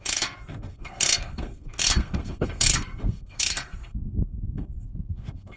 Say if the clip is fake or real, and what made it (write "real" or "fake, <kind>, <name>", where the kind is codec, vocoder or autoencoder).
fake, codec, SNAC